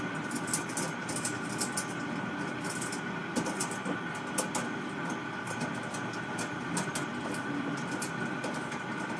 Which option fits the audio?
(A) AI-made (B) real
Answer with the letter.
B